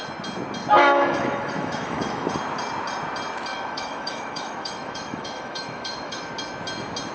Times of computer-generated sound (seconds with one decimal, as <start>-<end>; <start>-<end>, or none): 0.8-2.3; 3.5-6.3

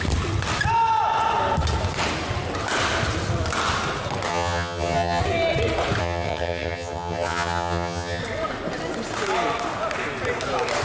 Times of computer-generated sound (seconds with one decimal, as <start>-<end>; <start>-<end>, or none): 4.3-5.2; 6.0-8.2

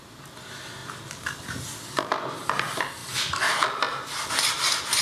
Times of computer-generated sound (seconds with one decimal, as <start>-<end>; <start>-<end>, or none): none

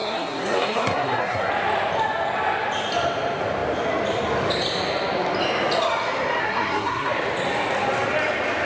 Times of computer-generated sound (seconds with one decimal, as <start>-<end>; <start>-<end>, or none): 0.0-1.5; 6.4-7.1

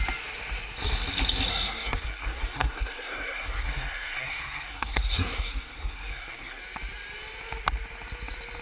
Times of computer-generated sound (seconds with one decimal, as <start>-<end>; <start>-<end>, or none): 1.5-6.6

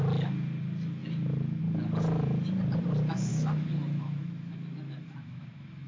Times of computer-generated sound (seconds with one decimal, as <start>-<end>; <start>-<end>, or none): 3.3-5.9

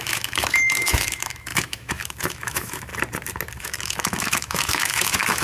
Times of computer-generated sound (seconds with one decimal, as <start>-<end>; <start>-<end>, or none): 0.0-2.9; 3.6-5.4